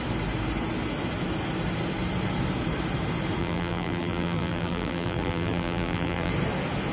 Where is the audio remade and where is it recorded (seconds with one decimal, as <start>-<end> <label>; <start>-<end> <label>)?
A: 0.0-3.4 recorded; 3.4-6.3 remade; 6.3-6.9 recorded